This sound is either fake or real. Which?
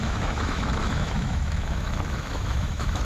fake